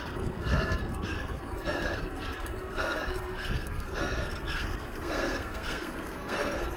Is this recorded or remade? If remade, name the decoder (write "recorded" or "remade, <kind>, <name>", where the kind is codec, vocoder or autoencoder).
remade, codec, SNAC